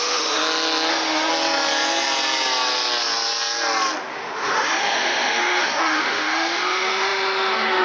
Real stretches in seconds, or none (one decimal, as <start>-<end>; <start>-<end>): 0.4-0.9; 1.3-4.1